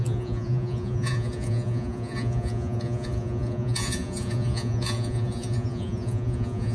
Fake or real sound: fake